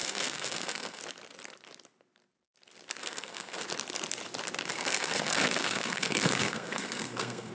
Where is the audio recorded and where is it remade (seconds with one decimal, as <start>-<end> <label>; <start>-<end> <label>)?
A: 0.0-1.0 remade; 1.0-3.0 recorded; 3.0-3.6 remade; 3.6-4.7 recorded; 4.7-7.5 remade